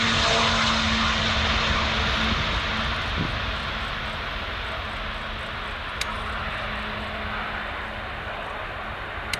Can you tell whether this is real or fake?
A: real